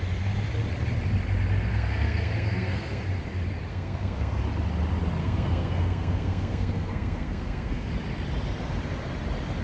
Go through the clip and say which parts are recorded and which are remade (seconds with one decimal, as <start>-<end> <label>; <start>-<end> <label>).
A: 0.0-1.7 recorded; 1.7-3.0 remade; 3.0-3.7 recorded; 3.7-4.4 remade; 4.4-5.2 recorded; 5.2-7.9 remade; 7.9-9.6 recorded